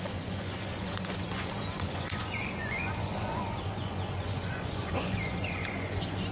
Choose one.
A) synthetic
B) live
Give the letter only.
A